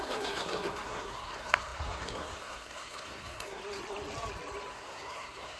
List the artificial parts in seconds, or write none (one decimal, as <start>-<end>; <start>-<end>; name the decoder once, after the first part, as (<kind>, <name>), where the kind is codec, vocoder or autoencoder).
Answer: 0.0-3.6 (codec, SNAC); 4.7-5.6